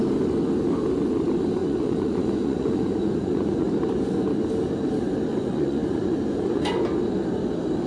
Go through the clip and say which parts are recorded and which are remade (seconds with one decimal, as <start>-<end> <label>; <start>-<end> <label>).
0.0-1.6 recorded; 1.6-3.7 remade; 3.7-5.3 recorded; 5.3-6.8 remade; 6.8-7.9 recorded